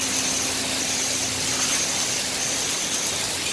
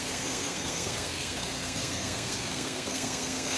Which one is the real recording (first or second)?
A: first